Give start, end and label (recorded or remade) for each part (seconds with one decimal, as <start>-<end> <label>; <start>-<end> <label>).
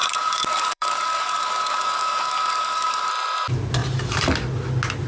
0.0-3.1 remade; 3.1-5.1 recorded